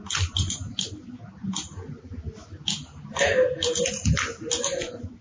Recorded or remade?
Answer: recorded